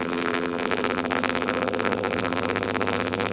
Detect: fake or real fake